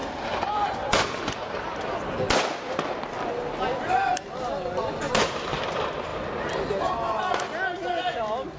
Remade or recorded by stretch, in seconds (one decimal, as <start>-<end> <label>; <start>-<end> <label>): 0.0-8.6 recorded